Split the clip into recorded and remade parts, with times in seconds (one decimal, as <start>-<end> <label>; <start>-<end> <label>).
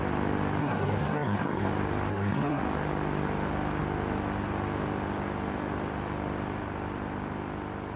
0.0-0.6 recorded; 0.6-1.7 remade; 1.7-2.1 recorded; 2.1-2.6 remade; 2.6-8.0 recorded